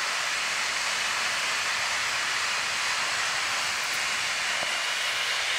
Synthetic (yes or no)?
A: no